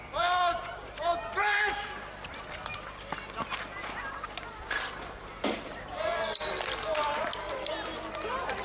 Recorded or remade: remade